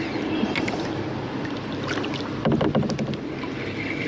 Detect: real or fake real